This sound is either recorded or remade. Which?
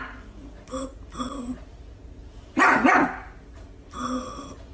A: recorded